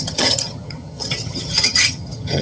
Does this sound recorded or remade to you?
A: remade